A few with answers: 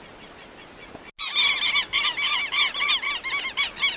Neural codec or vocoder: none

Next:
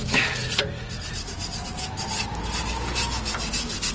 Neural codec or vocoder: none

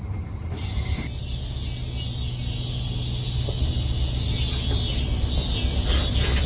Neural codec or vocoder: none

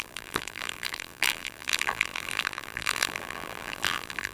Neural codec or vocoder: vocoder, BigVGAN v2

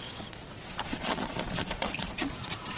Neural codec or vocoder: vocoder, Vocos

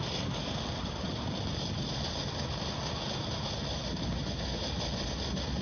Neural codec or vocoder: none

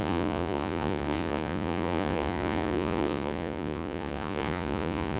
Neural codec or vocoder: vocoder, Vocos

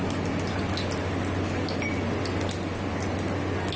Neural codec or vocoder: none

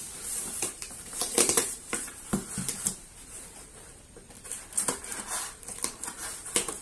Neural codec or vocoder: vocoder, BigVGAN v2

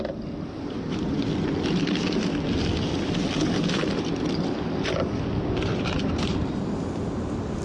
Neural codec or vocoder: none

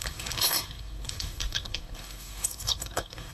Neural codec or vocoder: codec, SNAC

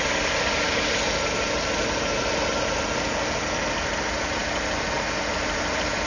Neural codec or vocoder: none